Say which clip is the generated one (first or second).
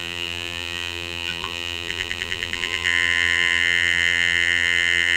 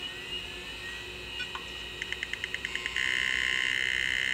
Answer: first